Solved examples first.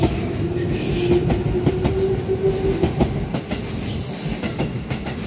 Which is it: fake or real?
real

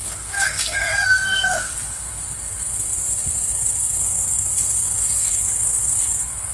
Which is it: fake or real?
fake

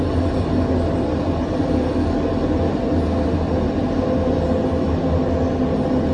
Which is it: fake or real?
real